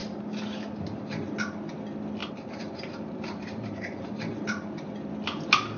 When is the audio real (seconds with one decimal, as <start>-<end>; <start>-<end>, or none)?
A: 0.0-2.2; 5.1-5.8